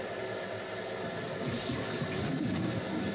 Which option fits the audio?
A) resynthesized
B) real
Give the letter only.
B